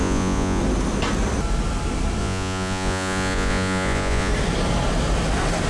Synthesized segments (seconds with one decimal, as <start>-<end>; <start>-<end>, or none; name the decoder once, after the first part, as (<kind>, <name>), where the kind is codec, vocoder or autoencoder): 0.0-0.6 (vocoder, Vocos); 2.2-4.3